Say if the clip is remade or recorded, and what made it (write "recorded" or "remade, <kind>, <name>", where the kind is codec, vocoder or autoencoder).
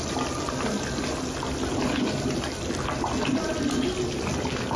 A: recorded